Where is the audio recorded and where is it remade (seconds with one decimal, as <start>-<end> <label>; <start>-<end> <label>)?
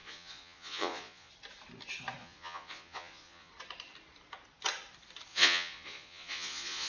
0.0-1.3 remade; 1.3-2.2 recorded; 2.2-3.5 remade; 3.5-5.3 recorded; 5.3-6.9 remade